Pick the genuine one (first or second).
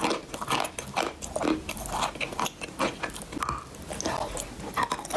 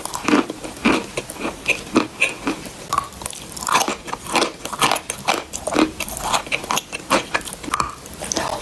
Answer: first